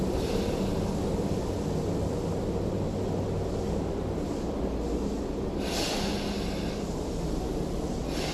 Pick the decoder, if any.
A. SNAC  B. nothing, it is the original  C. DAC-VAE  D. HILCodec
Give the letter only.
B